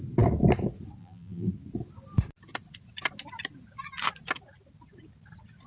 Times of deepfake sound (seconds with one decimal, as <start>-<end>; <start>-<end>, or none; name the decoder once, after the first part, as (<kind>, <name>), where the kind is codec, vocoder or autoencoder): 1.0-1.5 (vocoder, BigVGAN v2)